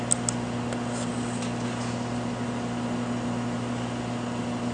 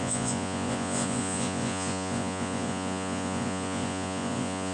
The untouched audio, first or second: first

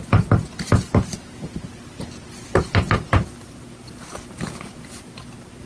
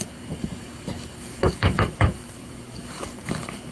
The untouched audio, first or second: first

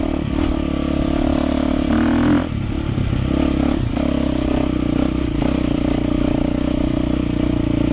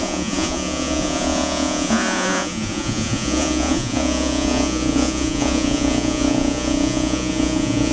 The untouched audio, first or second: first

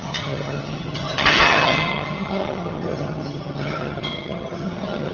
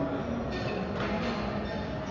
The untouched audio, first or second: second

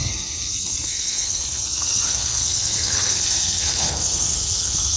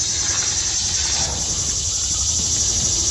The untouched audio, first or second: second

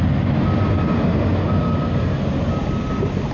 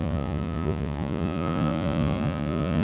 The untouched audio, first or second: first